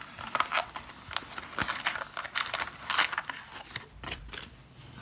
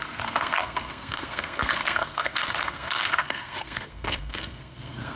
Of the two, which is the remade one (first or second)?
second